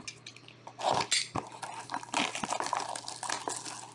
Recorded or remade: recorded